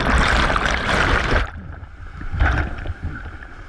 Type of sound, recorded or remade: remade